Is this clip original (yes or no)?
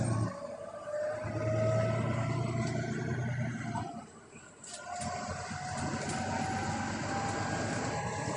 yes